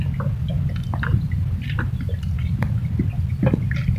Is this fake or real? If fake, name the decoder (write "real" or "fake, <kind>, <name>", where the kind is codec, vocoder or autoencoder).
real